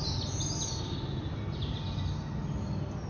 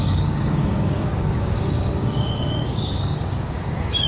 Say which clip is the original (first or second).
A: first